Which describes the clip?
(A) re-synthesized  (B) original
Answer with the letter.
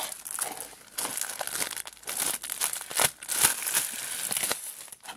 B